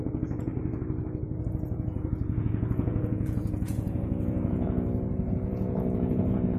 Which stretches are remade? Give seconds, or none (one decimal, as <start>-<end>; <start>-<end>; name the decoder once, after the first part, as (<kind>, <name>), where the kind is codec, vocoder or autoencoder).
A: 0.0-0.5 (vocoder, Vocos); 1.4-6.6